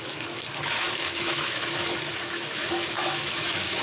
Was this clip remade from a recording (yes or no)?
yes